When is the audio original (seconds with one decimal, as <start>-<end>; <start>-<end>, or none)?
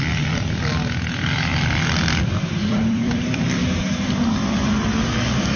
0.0-1.5; 4.9-5.6